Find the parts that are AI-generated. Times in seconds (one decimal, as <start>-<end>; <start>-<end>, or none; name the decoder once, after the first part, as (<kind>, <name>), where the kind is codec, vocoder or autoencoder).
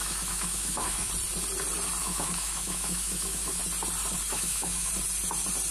0.0-1.1 (autoencoder, DAC-VAE); 2.0-3.6; 4.3-4.9